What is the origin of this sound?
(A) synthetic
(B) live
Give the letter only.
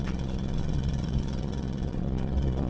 A